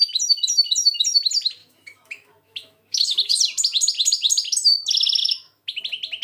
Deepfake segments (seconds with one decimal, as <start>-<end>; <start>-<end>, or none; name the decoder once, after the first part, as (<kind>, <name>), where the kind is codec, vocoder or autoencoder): 1.6-3.4 (autoencoder, DAC-VAE); 5.2-5.8